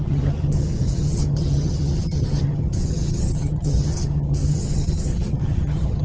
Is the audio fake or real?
fake